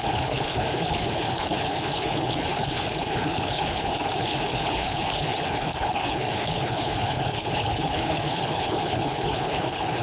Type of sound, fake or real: fake